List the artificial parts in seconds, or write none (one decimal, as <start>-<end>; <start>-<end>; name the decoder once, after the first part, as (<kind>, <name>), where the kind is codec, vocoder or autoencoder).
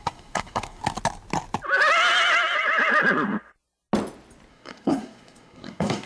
0.0-0.8 (codec, SNAC); 4.5-6.1